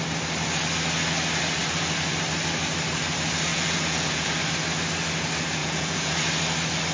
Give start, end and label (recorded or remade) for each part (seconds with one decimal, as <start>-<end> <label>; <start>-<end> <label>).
0.0-3.5 recorded; 3.5-4.3 remade; 4.3-5.6 recorded; 5.6-6.1 remade; 6.1-6.9 recorded